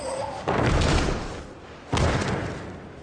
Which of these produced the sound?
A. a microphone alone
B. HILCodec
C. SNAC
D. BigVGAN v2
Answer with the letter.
A